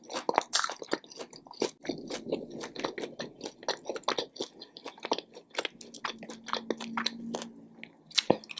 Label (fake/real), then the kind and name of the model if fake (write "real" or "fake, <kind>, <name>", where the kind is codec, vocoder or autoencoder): real